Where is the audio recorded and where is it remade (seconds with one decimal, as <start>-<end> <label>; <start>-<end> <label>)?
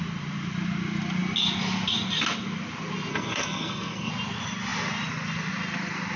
0.0-3.1 recorded; 3.1-4.1 remade; 4.1-6.2 recorded